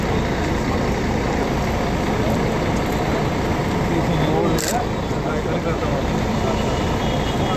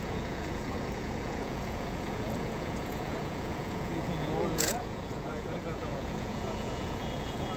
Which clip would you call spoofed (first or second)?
second